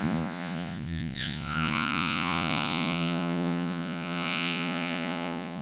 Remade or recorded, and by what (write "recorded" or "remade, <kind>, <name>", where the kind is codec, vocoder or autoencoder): remade, vocoder, Vocos